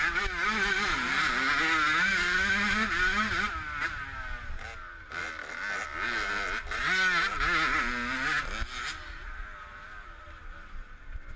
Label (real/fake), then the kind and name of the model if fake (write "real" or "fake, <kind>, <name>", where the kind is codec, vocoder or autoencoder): real